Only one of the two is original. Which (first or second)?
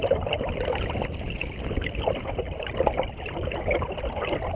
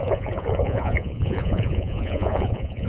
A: first